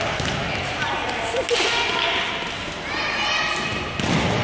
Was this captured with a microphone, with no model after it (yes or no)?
yes